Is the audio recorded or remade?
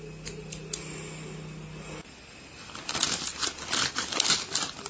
recorded